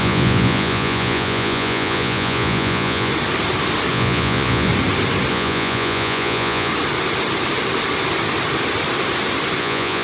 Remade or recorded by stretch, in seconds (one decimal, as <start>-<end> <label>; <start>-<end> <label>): 0.0-3.1 remade; 3.1-3.9 recorded; 3.9-4.7 remade; 4.7-5.3 recorded; 5.3-6.7 remade; 6.7-9.6 recorded; 9.6-10.0 remade